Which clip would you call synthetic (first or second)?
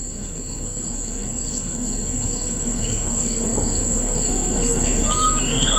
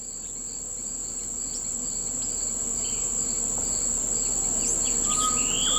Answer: first